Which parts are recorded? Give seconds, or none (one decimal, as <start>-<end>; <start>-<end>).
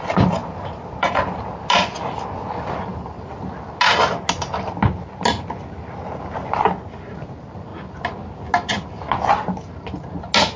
0.0-0.4; 1.4-2.9; 3.4-10.6